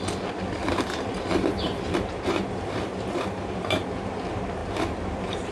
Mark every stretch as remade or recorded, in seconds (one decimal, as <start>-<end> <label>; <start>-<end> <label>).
0.0-0.6 recorded; 0.6-3.8 remade; 3.8-4.6 recorded; 4.6-5.5 remade